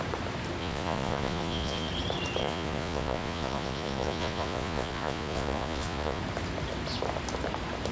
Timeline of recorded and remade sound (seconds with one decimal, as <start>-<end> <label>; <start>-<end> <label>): 0.0-0.6 recorded; 0.6-1.9 remade; 1.9-2.4 recorded; 2.4-6.2 remade; 6.2-7.9 recorded